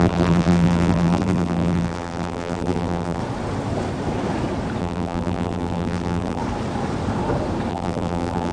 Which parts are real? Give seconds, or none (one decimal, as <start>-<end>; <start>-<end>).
3.2-4.8; 6.4-7.7